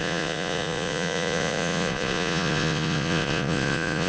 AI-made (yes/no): yes